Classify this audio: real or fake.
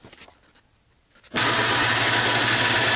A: real